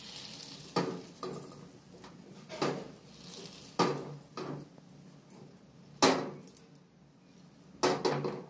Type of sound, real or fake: real